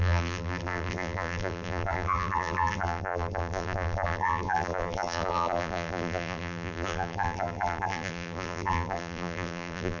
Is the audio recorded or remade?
remade